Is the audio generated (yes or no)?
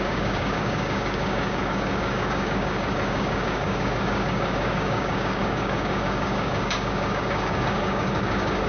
yes